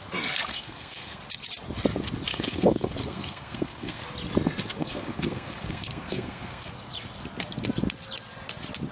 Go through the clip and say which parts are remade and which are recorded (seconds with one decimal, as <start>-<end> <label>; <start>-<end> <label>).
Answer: 0.0-0.5 recorded; 0.5-1.2 remade; 1.2-2.3 recorded; 2.3-4.0 remade; 4.0-4.8 recorded; 4.8-6.7 remade; 6.7-8.9 recorded